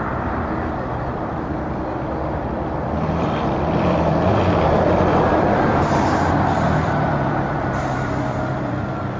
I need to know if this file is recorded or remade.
remade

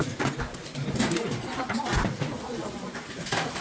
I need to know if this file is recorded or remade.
remade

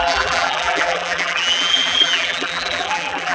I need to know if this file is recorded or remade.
remade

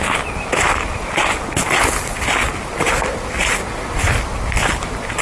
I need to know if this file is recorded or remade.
recorded